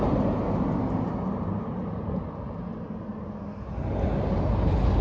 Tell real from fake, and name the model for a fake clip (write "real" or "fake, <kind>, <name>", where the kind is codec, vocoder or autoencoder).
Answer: real